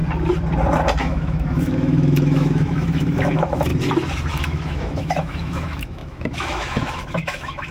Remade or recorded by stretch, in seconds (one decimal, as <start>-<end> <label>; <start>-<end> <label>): 0.0-1.0 recorded; 1.0-3.7 remade; 3.7-4.3 recorded; 4.3-7.7 remade